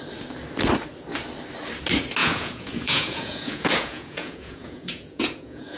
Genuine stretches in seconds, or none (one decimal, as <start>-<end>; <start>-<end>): 0.0-2.2